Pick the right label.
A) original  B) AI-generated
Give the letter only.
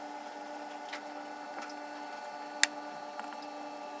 A